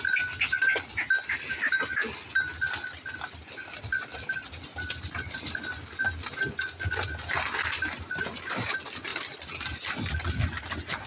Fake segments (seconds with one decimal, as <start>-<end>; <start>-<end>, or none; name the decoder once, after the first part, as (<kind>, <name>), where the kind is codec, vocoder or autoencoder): 4.1-5.4 (vocoder, BigVGAN v2); 9.1-9.6